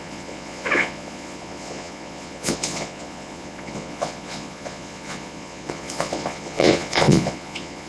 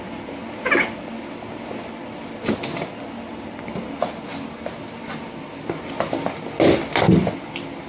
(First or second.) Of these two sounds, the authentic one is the second